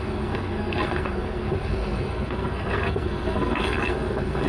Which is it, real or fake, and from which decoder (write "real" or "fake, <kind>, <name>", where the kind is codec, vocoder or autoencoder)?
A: fake, codec, SNAC